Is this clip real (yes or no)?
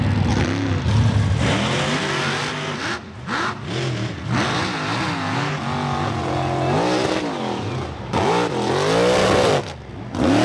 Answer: yes